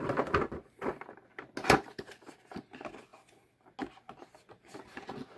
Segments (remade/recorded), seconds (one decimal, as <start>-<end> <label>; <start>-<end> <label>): 0.0-5.4 recorded